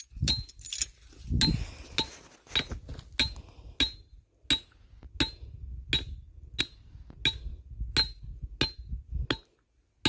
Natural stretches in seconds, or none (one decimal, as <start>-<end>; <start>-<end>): 0.0-10.1